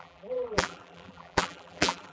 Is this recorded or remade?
remade